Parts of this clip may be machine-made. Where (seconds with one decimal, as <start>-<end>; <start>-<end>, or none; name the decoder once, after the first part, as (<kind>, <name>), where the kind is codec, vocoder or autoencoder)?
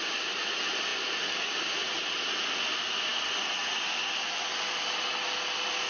0.9-1.9 (vocoder, BigVGAN v2)